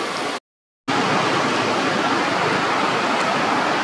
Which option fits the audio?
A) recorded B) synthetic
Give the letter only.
A